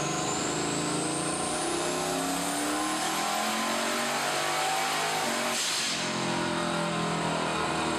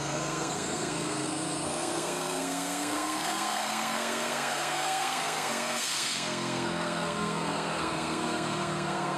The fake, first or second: second